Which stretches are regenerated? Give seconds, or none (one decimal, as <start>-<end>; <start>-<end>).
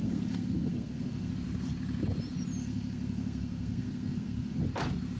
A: 0.0-1.3; 2.6-4.6